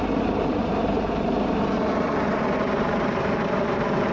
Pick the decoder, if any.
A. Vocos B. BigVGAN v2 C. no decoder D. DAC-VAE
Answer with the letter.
B